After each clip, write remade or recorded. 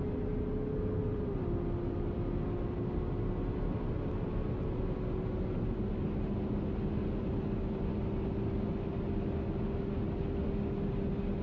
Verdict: recorded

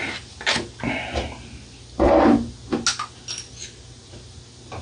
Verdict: recorded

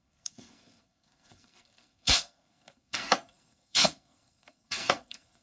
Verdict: remade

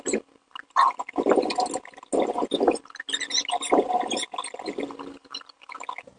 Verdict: recorded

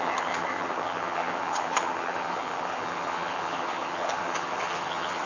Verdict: remade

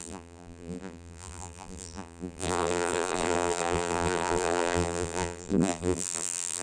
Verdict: remade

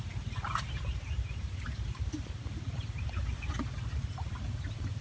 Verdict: recorded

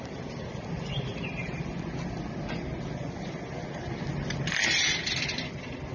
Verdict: recorded